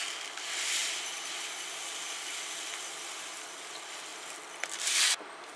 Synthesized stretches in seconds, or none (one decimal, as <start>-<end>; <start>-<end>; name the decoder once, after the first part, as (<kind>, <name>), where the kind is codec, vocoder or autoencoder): none